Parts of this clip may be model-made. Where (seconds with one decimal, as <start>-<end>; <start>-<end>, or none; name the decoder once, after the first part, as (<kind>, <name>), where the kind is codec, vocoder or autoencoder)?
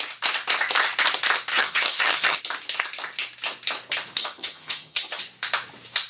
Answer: 1.5-2.4 (vocoder, HiFi-GAN); 4.2-5.2